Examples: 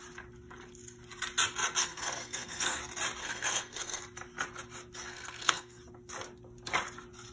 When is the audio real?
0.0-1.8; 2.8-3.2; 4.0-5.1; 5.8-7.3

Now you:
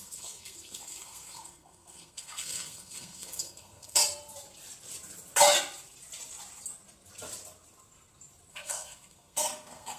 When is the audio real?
4.0-8.5